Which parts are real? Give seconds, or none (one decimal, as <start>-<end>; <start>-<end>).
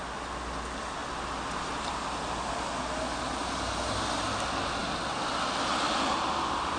0.0-6.8